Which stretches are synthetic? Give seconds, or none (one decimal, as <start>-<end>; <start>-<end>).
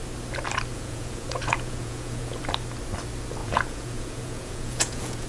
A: 0.7-2.4; 3.4-5.3